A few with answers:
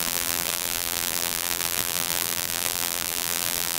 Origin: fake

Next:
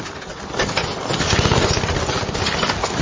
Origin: real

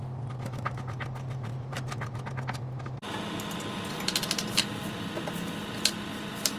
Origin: real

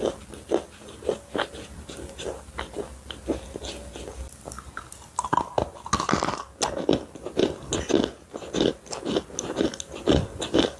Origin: real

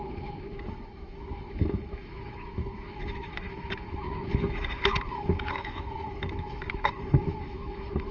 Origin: fake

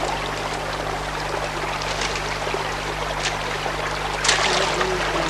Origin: real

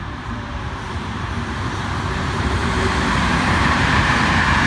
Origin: fake